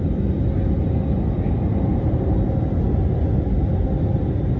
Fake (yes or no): no